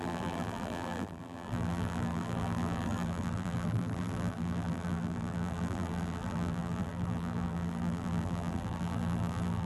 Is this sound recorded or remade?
remade